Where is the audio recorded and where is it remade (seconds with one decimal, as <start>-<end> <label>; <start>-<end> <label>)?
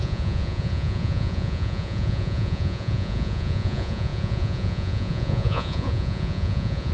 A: 0.0-6.9 remade